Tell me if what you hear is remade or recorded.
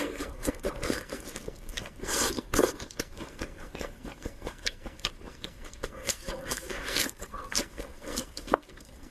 remade